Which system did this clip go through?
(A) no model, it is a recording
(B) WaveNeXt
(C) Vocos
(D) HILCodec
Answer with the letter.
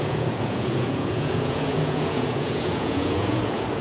C